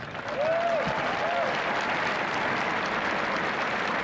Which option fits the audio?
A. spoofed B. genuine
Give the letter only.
B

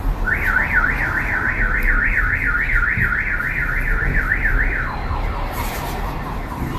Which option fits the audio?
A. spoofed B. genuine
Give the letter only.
B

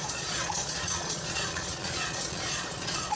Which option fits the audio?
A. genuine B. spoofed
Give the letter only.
B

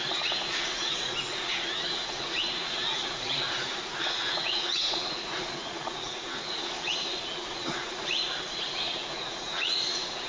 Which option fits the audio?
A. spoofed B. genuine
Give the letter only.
A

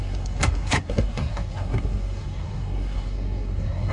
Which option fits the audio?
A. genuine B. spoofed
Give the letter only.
B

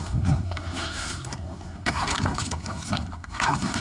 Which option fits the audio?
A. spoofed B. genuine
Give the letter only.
A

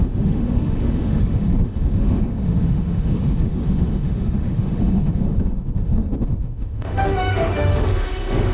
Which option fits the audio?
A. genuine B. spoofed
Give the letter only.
B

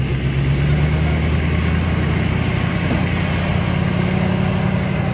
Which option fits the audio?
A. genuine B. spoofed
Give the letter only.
A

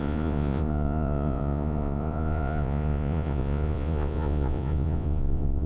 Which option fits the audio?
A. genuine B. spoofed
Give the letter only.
B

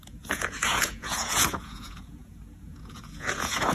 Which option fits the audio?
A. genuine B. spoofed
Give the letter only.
B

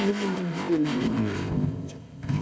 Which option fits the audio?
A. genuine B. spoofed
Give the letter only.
B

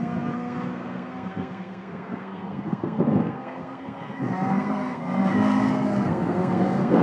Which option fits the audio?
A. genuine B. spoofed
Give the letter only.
B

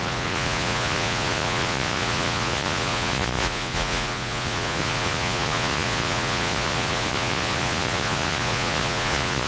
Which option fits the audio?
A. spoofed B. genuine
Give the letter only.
A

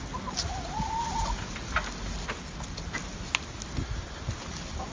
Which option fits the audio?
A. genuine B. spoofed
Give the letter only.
A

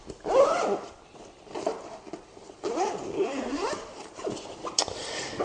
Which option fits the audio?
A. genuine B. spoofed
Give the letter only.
A